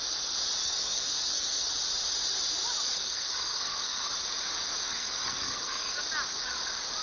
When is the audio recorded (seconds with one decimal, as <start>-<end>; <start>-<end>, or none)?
0.0-0.6; 1.7-2.9; 4.1-4.9; 6.0-7.0

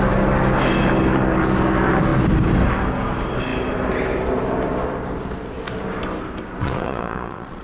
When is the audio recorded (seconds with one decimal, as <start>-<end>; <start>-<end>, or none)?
0.0-6.6

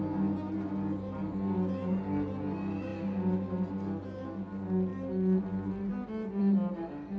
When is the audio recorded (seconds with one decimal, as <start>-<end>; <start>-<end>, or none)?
0.0-7.2

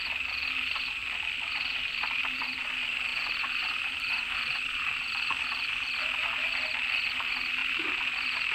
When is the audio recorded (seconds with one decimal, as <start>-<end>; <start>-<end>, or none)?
0.0-1.0; 2.6-3.1; 6.0-7.6; 8.1-8.5